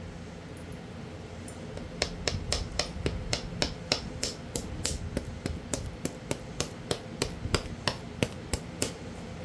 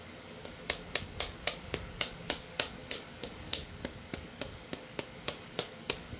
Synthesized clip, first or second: second